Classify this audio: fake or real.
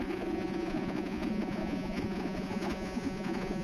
fake